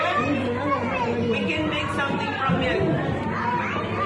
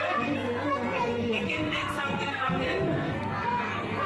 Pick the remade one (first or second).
second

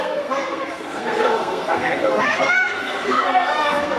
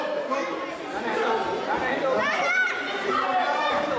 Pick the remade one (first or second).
first